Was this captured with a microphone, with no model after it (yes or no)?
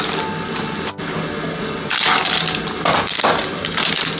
yes